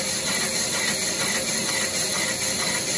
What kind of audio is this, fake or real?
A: real